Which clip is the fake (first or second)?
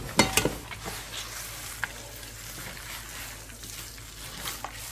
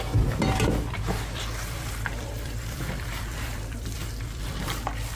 second